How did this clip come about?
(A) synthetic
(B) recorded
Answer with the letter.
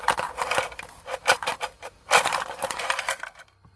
A